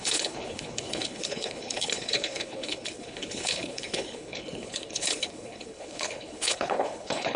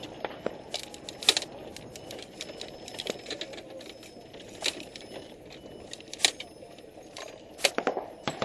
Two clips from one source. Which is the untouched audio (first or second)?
second